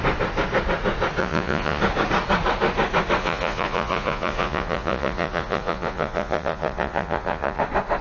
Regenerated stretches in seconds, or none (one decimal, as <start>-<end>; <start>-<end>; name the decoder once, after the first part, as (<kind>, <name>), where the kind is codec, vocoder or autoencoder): 1.2-1.8 (vocoder, Vocos); 3.2-7.6